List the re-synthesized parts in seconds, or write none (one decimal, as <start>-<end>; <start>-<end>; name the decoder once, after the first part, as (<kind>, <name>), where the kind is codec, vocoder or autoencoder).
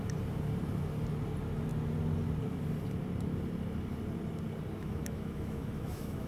4.8-6.3 (autoencoder, DAC-VAE)